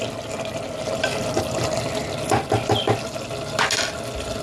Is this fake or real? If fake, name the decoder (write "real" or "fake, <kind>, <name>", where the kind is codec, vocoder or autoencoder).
real